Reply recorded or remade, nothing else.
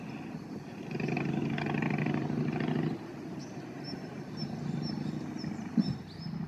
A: recorded